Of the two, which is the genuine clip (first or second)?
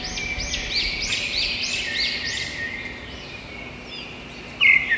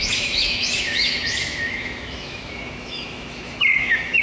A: first